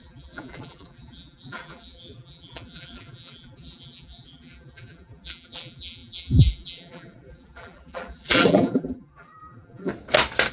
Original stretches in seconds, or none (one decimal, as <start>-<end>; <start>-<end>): 9.9-10.5